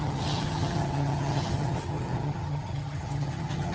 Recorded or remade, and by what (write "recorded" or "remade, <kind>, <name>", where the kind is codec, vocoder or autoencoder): remade, vocoder, HiFi-GAN